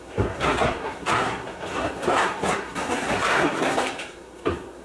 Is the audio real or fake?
fake